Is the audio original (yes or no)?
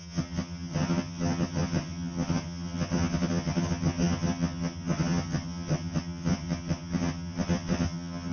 no